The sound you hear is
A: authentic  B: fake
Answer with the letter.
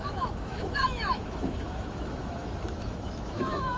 B